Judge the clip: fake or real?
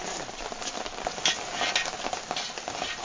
real